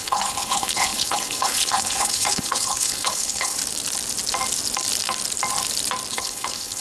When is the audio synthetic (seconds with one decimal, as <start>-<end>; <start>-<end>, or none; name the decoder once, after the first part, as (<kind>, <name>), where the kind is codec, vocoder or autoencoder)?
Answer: 0.0-3.6 (codec, HILCodec); 6.1-6.8